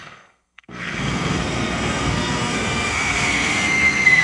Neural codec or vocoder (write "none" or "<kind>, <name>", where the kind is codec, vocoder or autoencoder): codec, SNAC